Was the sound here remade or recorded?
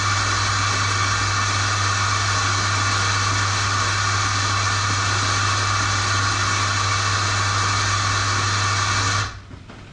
recorded